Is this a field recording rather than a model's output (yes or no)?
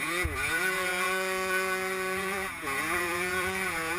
no